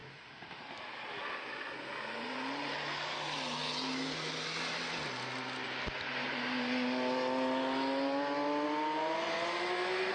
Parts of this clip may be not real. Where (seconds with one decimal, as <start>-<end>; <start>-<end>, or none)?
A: 0.0-0.6